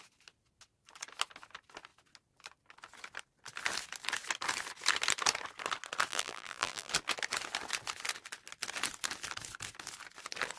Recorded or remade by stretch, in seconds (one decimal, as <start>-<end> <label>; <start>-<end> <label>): 0.0-6.1 recorded; 6.1-6.9 remade; 6.9-10.6 recorded